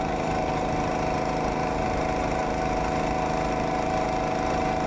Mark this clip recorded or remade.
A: recorded